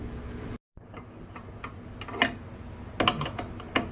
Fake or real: real